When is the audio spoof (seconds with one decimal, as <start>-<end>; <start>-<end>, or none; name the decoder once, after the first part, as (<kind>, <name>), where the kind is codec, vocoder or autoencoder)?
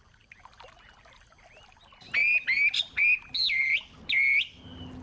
none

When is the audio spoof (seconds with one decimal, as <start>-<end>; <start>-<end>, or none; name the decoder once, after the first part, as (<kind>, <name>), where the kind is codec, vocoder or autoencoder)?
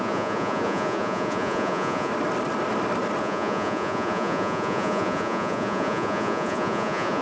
0.0-2.1 (vocoder, Vocos); 3.2-7.2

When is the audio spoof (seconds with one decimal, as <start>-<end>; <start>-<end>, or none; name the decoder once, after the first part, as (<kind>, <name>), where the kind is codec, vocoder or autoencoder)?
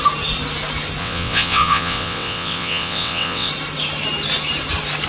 1.0-3.5 (vocoder, WaveNeXt)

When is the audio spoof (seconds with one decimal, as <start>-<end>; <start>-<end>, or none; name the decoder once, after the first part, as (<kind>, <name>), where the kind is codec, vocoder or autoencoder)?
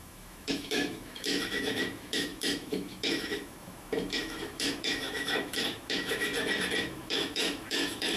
0.0-6.3 (autoencoder, DAC-VAE); 6.8-8.2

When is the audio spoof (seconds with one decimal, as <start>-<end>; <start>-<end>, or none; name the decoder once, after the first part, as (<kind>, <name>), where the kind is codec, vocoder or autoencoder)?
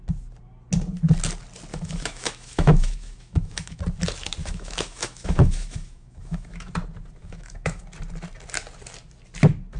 1.7-3.8 (autoencoder, DAC-VAE); 4.4-6.7; 7.2-7.8